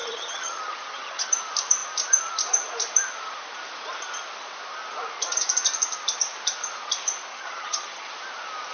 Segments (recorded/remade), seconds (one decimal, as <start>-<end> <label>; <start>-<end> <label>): 0.0-1.3 remade; 1.3-7.3 recorded; 7.3-8.1 remade; 8.1-8.7 recorded